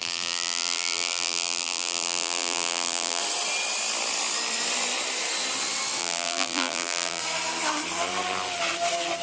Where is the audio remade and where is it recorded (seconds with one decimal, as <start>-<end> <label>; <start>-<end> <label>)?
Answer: 0.0-3.2 remade; 3.2-6.0 recorded; 6.0-7.2 remade; 7.2-9.2 recorded